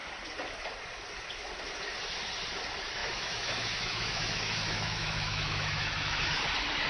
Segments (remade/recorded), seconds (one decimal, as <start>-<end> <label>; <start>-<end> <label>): 0.0-3.0 recorded; 3.0-6.4 remade; 6.4-6.9 recorded